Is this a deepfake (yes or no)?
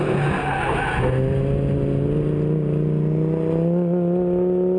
no